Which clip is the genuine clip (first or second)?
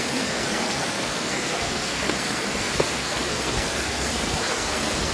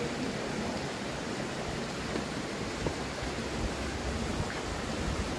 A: second